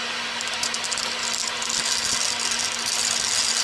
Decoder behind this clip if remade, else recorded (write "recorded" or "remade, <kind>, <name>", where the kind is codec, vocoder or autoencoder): recorded